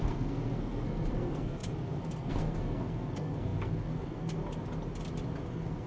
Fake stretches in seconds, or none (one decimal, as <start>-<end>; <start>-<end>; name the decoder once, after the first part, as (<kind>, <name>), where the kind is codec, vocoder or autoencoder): 0.0-4.4 (codec, SNAC); 5.5-5.9